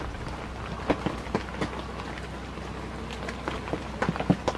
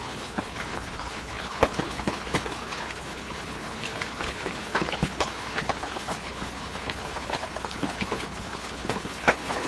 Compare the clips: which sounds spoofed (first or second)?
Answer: second